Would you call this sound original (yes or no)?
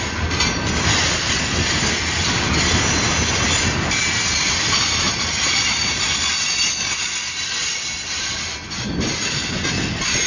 yes